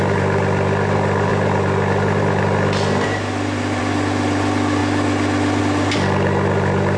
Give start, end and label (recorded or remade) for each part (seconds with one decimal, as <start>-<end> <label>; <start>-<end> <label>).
0.0-7.0 recorded